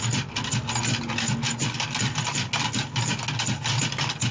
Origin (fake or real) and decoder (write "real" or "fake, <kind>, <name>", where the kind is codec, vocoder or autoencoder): real